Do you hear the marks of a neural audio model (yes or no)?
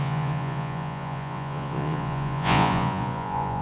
yes